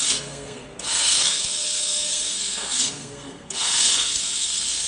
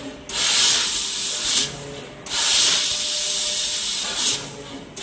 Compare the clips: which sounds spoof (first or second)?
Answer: first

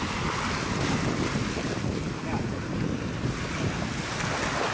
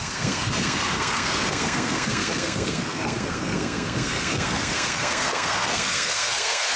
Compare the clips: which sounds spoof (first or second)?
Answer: second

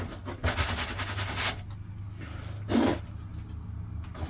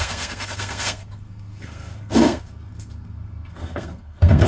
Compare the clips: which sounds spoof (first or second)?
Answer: second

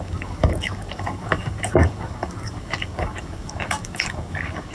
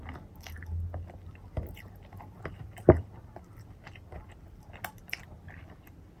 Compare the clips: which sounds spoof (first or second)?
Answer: first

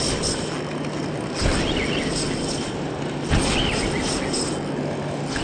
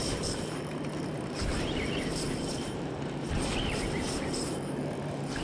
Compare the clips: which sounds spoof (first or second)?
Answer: second